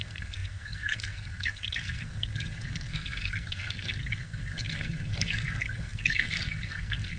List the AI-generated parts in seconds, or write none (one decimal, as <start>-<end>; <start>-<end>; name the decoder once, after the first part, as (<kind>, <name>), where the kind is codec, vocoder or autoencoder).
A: 0.0-7.2 (codec, SNAC)

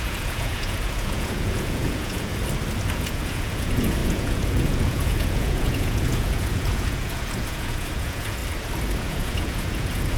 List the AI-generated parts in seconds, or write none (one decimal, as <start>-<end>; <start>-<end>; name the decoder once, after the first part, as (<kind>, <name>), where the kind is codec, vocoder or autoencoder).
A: 0.0-2.3 (vocoder, Vocos); 2.9-8.4; 9.0-10.2